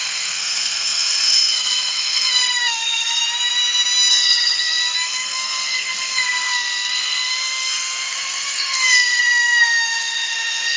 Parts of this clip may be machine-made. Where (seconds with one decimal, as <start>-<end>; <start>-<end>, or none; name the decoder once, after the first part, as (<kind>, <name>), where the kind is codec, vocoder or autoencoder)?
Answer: 0.0-3.2 (codec, SNAC); 4.1-10.8